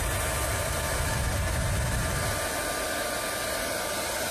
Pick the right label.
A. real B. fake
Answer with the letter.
A